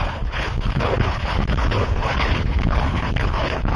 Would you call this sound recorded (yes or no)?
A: no